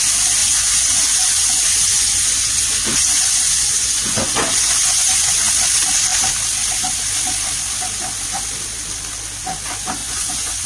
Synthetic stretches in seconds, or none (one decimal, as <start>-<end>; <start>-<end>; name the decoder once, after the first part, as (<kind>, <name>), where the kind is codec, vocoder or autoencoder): 0.4-5.5 (vocoder, Vocos); 10.0-10.7